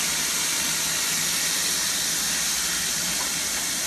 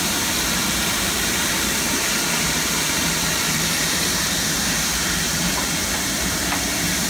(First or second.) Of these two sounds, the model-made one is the second